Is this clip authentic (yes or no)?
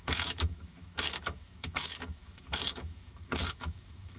no